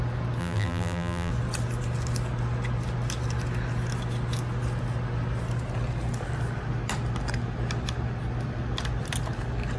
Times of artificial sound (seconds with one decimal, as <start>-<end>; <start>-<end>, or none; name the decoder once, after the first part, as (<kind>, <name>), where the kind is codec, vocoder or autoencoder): 0.4-1.3 (vocoder, BigVGAN v2)